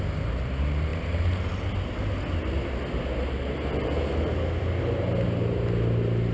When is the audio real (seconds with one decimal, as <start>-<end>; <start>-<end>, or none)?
0.0-6.3